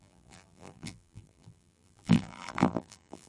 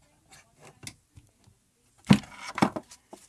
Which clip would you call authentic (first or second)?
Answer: second